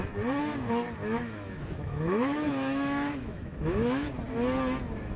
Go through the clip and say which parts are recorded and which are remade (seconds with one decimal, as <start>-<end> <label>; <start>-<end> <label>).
0.0-1.0 recorded; 1.0-4.1 remade; 4.1-5.2 recorded